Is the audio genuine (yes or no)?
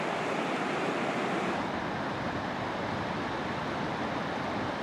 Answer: yes